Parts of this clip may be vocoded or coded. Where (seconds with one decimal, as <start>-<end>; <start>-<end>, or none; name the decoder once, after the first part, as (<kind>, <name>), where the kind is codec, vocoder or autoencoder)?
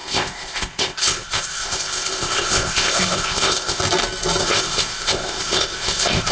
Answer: 0.0-3.8 (codec, ZipCodec); 4.4-6.3